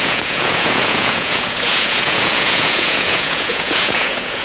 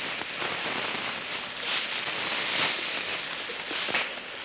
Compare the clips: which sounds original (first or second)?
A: second